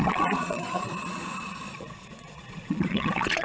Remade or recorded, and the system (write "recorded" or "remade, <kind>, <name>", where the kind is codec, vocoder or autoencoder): remade, vocoder, Vocos